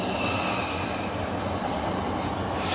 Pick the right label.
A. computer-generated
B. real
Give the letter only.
B